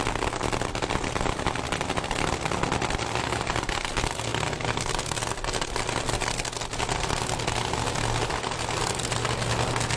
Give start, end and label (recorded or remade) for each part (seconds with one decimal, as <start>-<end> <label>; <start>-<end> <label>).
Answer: 0.0-10.0 recorded